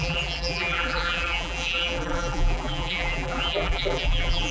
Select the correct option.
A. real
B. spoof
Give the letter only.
B